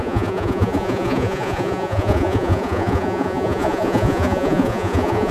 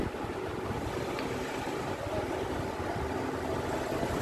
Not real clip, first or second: first